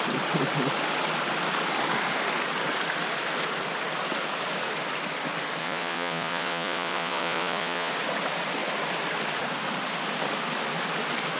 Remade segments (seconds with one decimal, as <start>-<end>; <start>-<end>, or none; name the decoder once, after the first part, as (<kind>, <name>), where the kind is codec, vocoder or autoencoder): 5.6-7.9 (vocoder, Vocos)